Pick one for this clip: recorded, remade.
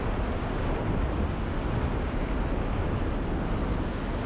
recorded